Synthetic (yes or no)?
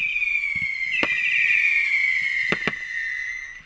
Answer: no